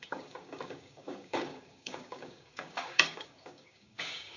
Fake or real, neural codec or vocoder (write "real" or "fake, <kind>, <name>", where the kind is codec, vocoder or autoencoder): fake, codec, DAC